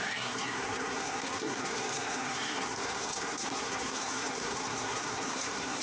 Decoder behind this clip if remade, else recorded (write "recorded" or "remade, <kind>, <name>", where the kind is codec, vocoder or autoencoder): remade, codec, SNAC